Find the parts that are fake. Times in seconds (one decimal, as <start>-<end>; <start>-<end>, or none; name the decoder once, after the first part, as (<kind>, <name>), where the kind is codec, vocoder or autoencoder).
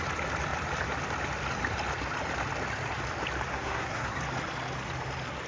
3.5-4.2 (codec, SNAC)